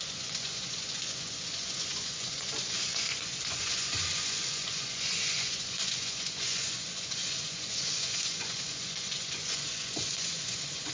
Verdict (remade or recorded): remade